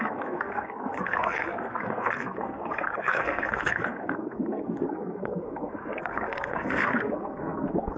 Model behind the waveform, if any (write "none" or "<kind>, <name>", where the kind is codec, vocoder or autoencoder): codec, SNAC